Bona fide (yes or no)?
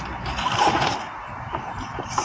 no